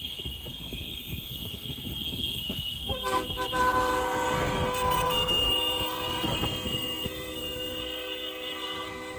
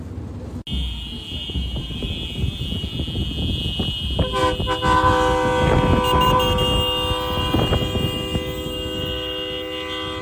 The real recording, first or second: second